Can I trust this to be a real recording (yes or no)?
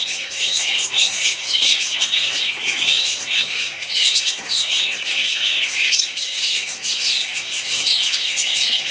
no